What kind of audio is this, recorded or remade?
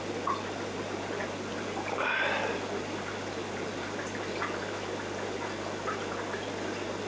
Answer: recorded